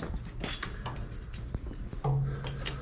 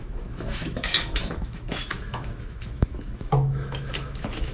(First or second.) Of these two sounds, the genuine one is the first